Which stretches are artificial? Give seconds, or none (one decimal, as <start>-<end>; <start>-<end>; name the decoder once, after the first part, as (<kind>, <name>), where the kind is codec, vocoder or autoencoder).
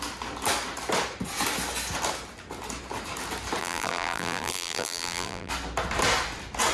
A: 3.6-5.5 (vocoder, BigVGAN v2)